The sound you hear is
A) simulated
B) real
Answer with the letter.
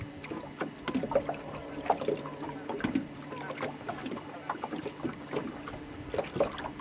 B